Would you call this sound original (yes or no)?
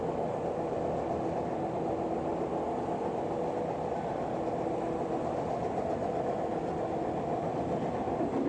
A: yes